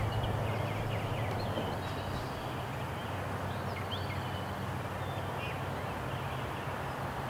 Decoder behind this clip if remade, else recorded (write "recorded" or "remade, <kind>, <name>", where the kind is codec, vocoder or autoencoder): recorded